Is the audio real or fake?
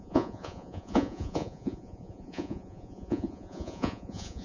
fake